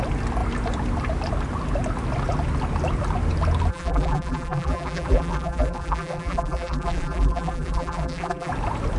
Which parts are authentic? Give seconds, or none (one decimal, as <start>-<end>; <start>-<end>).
0.0-3.7; 8.5-9.0